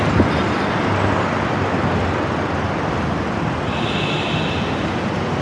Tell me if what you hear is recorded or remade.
recorded